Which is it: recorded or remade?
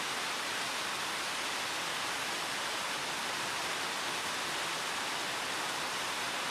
recorded